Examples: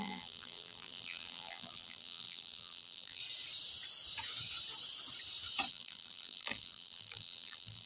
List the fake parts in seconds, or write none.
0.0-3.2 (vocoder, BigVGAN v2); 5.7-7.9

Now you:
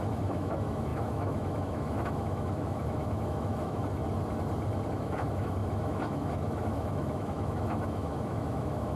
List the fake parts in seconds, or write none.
0.0-4.0 (autoencoder, DAC-VAE); 4.9-9.0

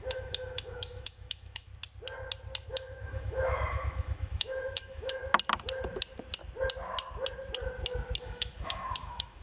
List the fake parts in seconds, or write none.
0.0-1.7 (autoencoder, DAC-VAE); 2.7-5.2; 8.2-9.4

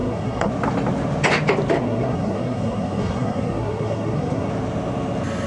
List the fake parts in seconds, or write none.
0.0-0.5 (codec, SNAC); 1.8-4.5

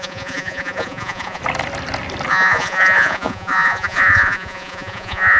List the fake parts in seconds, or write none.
0.0-1.4 (vocoder, Vocos); 2.3-5.4